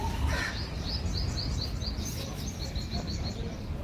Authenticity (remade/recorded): recorded